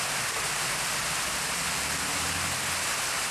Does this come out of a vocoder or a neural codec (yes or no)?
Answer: no